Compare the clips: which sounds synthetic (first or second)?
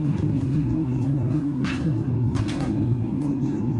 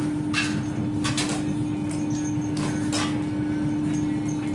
first